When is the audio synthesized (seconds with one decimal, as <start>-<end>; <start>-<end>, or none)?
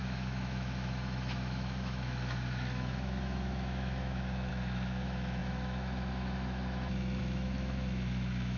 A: 0.0-8.6